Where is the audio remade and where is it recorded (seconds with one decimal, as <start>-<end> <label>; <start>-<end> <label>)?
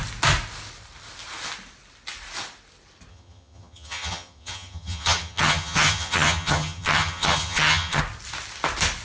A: 0.0-3.1 recorded; 3.1-8.0 remade; 8.0-9.0 recorded